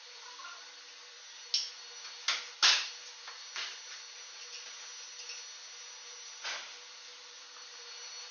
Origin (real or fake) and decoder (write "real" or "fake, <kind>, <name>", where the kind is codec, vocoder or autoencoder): real